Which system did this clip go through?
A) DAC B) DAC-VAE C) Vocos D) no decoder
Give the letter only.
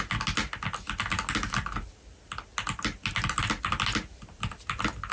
D